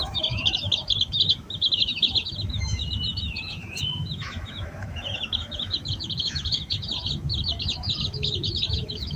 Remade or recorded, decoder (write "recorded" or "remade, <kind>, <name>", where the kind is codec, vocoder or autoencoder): remade, autoencoder, DAC-VAE